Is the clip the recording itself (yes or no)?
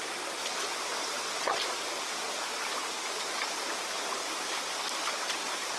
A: yes